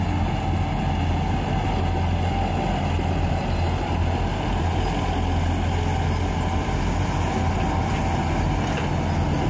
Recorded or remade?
recorded